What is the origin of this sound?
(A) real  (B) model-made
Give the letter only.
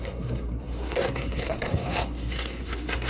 B